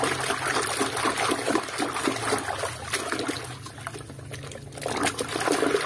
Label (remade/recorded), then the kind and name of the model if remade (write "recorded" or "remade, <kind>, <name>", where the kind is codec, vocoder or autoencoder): recorded